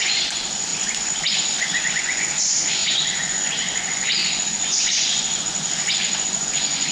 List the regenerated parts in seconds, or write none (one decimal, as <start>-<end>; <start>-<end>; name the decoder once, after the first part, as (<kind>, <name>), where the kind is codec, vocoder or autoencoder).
0.0-6.9 (vocoder, Vocos)